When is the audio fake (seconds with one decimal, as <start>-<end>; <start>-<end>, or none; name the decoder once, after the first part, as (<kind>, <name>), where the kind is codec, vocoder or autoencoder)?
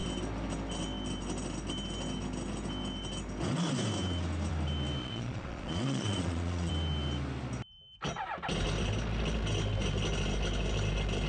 5.0-6.7 (vocoder, Vocos)